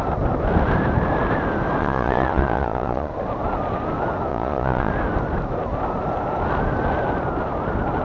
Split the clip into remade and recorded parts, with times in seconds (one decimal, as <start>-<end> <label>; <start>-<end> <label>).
0.0-1.8 recorded; 1.8-3.1 remade; 3.1-4.3 recorded; 4.3-4.9 remade; 4.9-8.0 recorded